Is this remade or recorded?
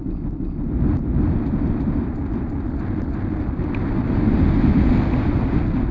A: recorded